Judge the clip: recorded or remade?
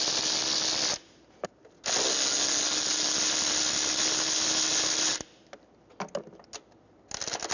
recorded